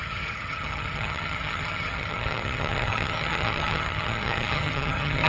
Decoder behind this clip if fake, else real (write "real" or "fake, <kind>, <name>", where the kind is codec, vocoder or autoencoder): fake, vocoder, HiFi-GAN